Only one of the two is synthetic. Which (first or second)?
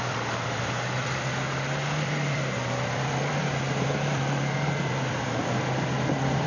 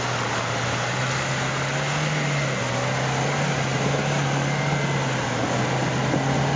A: first